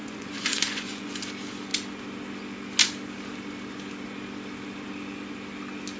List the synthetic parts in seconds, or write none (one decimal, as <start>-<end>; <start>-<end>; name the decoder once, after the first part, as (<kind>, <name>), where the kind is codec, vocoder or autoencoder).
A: 0.0-1.1 (vocoder, Vocos)